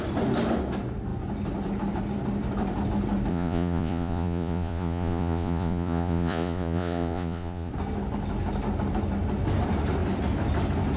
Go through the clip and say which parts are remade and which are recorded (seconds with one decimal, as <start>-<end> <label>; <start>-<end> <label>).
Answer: 0.0-3.3 recorded; 3.3-7.7 remade; 7.7-11.0 recorded